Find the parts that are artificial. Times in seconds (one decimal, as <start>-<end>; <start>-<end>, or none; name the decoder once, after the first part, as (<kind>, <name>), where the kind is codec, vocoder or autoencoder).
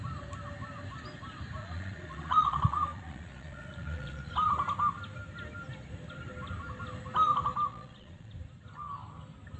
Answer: 1.6-4.3 (vocoder, Vocos); 7.7-8.3